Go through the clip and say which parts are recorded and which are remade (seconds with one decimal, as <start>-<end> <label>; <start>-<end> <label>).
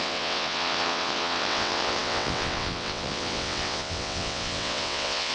0.0-5.3 remade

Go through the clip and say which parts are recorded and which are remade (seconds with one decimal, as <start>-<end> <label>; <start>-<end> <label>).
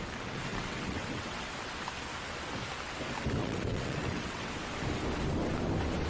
0.0-0.5 recorded; 0.5-1.5 remade; 1.5-3.4 recorded; 3.4-4.5 remade; 4.5-6.1 recorded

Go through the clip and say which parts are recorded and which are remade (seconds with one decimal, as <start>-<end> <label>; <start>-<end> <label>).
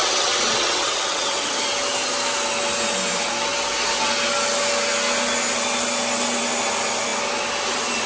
0.0-1.5 remade; 1.5-8.1 recorded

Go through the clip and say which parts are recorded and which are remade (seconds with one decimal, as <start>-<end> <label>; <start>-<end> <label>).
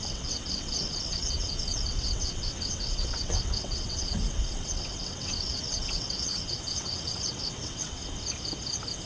0.0-8.0 remade; 8.0-9.1 recorded